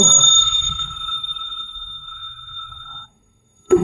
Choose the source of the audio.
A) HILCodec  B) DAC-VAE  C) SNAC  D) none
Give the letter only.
C